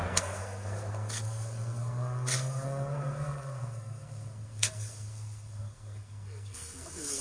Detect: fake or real fake